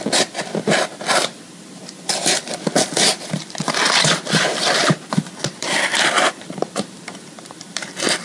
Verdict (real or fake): fake